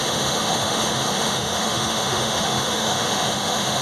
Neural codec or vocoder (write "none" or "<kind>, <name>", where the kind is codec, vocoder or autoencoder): autoencoder, DAC-VAE